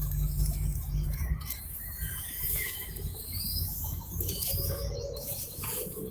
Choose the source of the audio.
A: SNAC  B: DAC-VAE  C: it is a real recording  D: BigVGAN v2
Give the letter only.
B